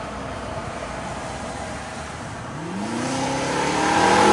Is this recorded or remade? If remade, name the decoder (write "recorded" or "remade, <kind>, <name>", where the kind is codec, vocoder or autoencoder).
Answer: remade, vocoder, BigVGAN v2